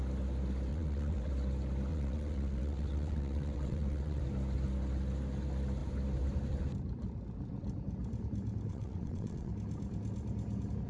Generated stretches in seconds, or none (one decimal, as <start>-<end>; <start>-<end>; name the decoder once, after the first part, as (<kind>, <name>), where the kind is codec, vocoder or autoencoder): 0.7-1.3 (vocoder, WaveNeXt); 1.9-4.2; 8.7-9.5